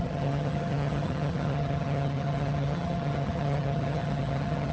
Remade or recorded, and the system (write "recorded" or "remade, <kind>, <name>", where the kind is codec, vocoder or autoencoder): remade, vocoder, HiFi-GAN